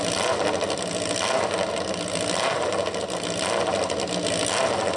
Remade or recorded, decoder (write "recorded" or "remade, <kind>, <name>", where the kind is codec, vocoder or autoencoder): recorded